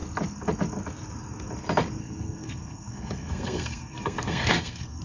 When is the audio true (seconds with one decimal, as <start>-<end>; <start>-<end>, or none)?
0.0-2.0